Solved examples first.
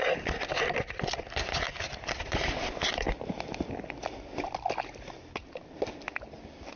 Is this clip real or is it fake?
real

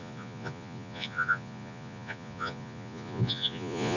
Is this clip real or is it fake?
fake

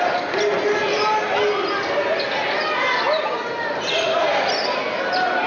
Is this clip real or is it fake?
real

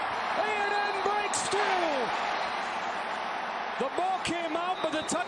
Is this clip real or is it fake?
real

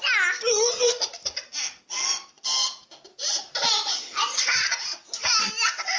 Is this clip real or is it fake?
real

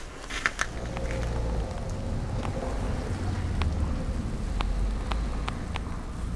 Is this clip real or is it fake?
real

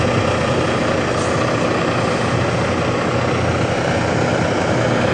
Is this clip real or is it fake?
real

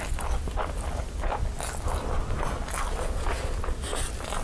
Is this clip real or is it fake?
real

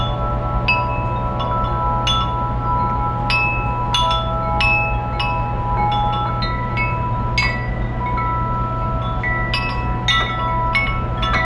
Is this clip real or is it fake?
real